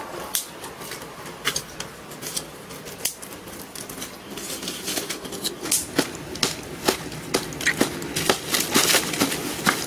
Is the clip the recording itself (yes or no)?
yes